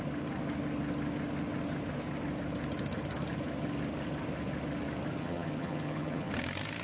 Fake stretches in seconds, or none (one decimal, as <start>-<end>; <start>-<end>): 5.2-6.3